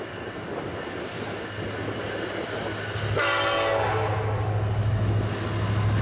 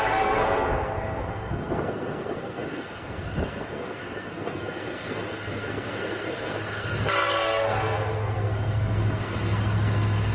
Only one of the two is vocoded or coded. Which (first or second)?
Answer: second